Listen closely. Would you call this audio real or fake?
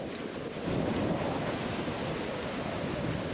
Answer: real